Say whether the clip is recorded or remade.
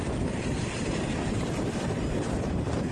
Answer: remade